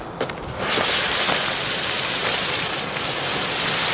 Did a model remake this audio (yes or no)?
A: no